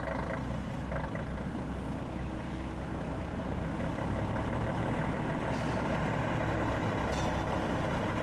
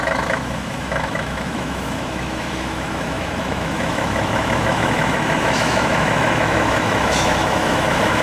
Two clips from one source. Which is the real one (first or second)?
first